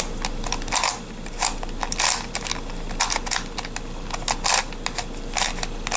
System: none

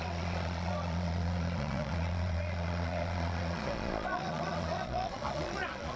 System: vocoder, Vocos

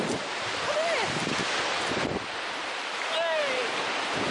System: none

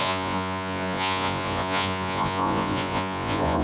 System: vocoder, Vocos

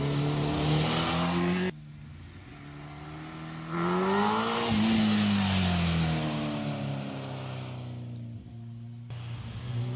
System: none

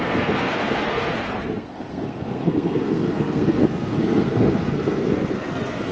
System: codec, SNAC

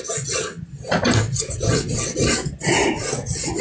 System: none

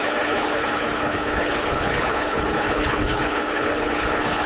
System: codec, HILCodec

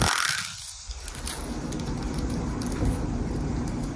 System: none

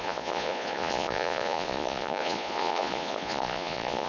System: vocoder, Vocos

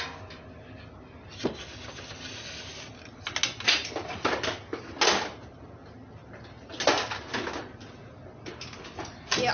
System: none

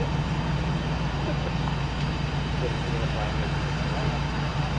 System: none